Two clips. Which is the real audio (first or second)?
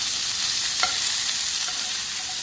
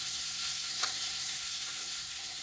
first